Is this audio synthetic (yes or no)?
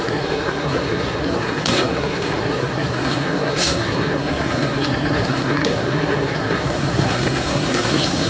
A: yes